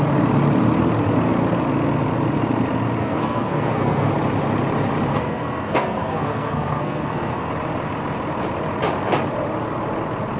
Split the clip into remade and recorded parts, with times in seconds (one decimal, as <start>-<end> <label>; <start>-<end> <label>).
0.0-3.0 recorded; 3.0-4.1 remade; 4.1-5.1 recorded; 5.1-7.5 remade; 7.5-10.4 recorded